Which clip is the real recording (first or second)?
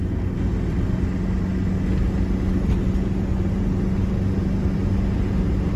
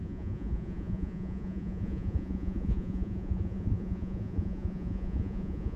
first